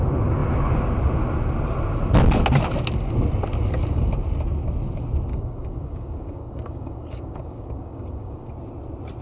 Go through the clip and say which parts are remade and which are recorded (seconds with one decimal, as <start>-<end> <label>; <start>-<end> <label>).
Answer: 0.0-5.3 recorded; 5.3-8.5 remade; 8.5-9.2 recorded